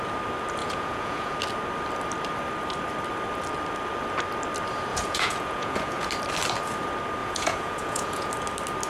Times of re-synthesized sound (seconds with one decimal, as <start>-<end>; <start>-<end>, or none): 0.6-1.3; 4.9-6.1; 7.2-8.3